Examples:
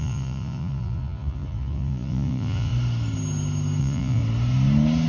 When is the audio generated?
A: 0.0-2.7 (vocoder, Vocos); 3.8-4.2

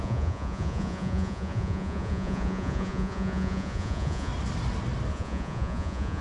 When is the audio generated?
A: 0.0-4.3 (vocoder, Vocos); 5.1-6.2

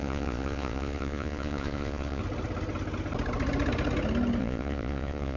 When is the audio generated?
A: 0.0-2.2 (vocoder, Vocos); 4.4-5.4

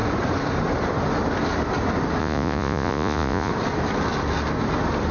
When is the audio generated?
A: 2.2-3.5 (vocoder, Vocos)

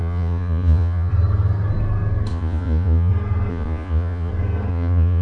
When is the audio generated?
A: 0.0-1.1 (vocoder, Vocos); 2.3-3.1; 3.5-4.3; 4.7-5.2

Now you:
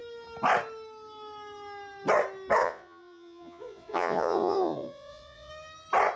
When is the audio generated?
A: 2.6-5.5 (vocoder, Vocos)